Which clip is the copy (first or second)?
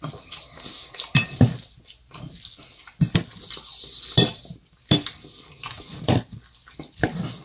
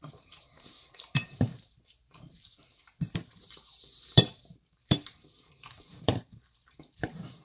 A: second